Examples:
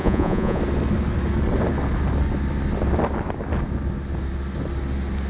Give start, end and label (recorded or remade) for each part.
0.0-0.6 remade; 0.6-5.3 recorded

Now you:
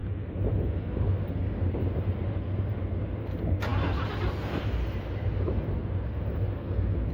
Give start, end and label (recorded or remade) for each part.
0.0-7.1 recorded

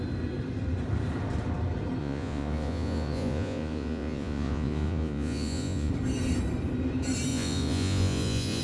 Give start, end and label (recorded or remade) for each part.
0.0-2.0 recorded; 2.0-5.9 remade; 5.9-7.3 recorded; 7.3-8.6 remade

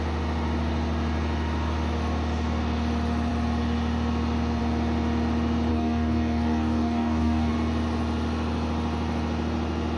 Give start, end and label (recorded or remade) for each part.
0.0-5.7 recorded; 5.7-7.5 remade; 7.5-10.0 recorded

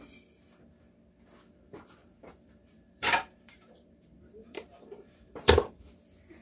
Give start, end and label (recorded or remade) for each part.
0.0-2.0 recorded; 2.0-5.8 remade; 5.8-6.4 recorded

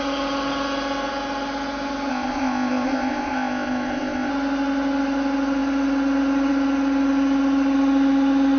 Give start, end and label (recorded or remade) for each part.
0.0-2.1 recorded; 2.1-4.3 remade; 4.3-8.6 recorded